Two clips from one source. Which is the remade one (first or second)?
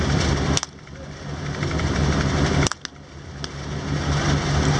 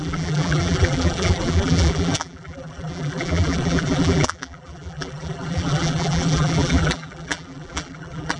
second